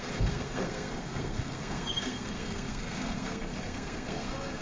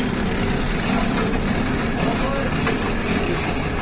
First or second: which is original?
second